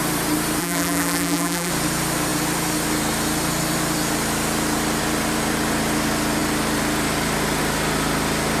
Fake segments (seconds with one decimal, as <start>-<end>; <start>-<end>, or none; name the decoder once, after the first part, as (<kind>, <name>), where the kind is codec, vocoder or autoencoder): 0.6-1.7 (vocoder, BigVGAN v2)